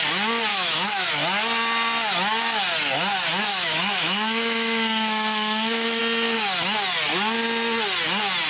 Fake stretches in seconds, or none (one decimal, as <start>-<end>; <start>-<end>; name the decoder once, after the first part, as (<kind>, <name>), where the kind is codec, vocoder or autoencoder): 0.5-1.1 (autoencoder, DAC-VAE); 3.5-6.0